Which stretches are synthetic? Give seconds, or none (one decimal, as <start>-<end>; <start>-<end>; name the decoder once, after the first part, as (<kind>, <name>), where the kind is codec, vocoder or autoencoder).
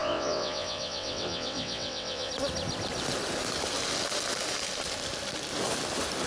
0.0-2.3 (vocoder, WaveNeXt)